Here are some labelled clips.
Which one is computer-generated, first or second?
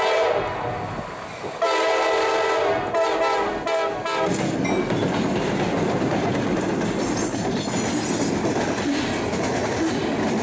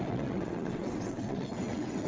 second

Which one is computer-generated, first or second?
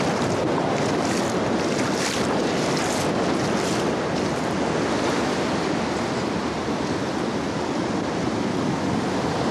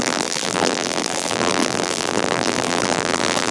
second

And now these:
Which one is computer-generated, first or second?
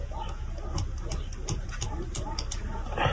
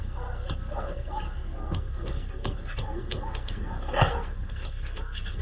second